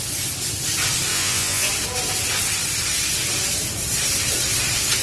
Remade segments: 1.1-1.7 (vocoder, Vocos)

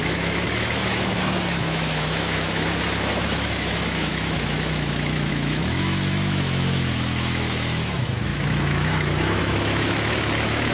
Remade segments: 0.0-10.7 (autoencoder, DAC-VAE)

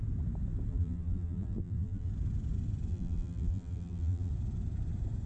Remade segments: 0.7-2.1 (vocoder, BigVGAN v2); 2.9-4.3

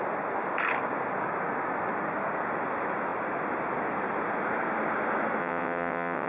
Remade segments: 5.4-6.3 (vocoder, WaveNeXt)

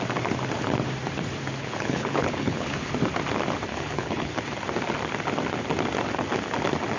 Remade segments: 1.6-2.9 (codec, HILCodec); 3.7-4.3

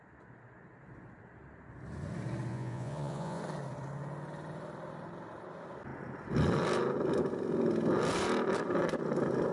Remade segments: 2.5-3.4 (vocoder, Vocos)

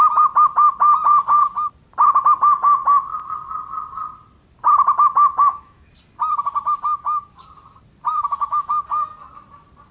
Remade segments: 5.3-5.9 (autoencoder, DAC-VAE); 8.1-8.7

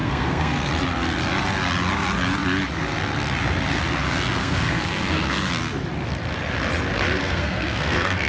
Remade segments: 0.0-0.7 (codec, SNAC); 4.4-5.5; 7.2-8.3